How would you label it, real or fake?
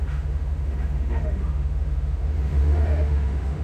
fake